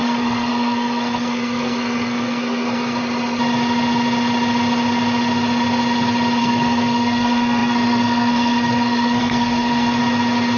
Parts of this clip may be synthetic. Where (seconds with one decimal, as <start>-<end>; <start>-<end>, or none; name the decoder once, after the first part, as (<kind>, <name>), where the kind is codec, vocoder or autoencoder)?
0.0-3.0 (codec, SNAC); 6.4-10.0